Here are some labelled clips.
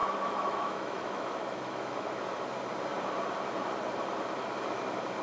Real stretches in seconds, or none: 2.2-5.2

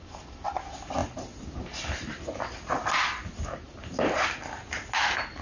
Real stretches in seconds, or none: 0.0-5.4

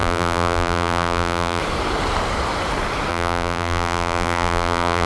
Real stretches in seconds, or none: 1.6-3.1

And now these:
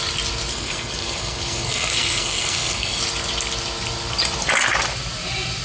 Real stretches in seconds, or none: 0.0-0.5; 3.0-5.6

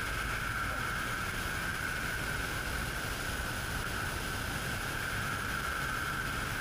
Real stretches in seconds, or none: 0.0-6.6

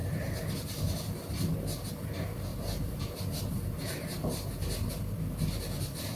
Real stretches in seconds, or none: 0.0-2.5; 3.2-6.2

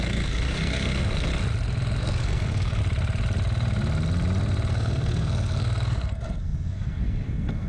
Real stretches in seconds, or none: 1.3-2.0; 2.8-4.7

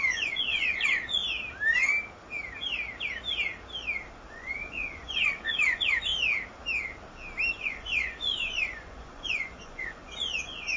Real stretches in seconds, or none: 1.2-4.3; 6.1-7.5